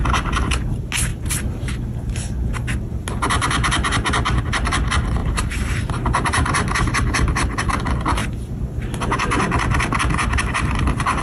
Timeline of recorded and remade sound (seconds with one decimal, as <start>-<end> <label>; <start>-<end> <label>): 0.0-1.1 recorded; 1.1-1.7 remade; 1.7-5.2 recorded; 5.2-7.8 remade; 7.8-11.2 recorded